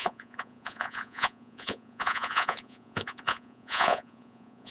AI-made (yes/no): yes